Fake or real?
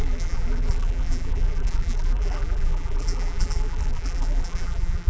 fake